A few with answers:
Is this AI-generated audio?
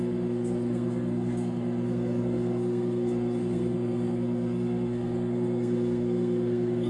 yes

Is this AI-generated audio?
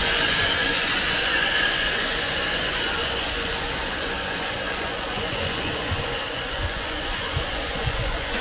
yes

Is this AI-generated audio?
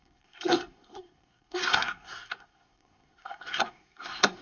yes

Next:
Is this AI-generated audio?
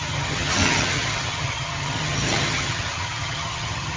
yes